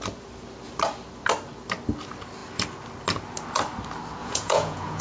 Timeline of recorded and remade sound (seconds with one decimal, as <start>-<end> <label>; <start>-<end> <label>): 0.0-4.2 recorded; 4.2-5.0 remade